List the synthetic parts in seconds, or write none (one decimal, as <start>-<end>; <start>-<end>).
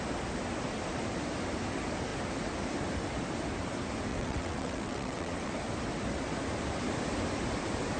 4.1-5.5